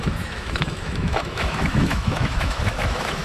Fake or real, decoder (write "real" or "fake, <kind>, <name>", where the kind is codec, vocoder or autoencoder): fake, autoencoder, DAC-VAE